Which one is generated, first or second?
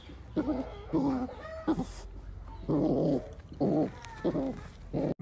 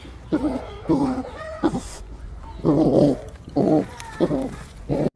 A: second